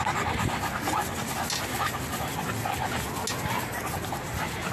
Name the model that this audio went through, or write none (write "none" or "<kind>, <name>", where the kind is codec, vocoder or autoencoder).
none